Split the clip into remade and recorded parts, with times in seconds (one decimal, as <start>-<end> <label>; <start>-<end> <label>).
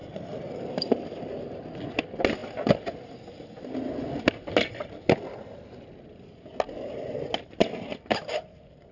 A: 0.0-2.0 remade; 2.0-7.9 recorded; 7.9-8.9 remade